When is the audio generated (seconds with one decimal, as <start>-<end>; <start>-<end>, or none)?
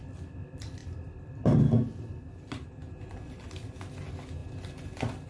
0.0-2.8; 3.4-4.4